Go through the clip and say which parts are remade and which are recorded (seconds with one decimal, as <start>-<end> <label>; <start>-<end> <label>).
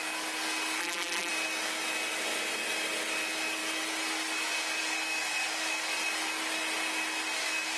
0.0-0.8 recorded; 0.8-1.3 remade; 1.3-7.8 recorded